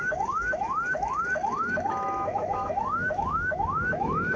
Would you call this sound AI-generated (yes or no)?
yes